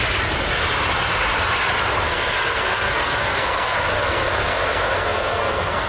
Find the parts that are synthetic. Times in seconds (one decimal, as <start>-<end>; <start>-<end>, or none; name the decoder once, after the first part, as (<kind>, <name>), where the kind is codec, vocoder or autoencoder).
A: 2.1-5.9 (codec, SNAC)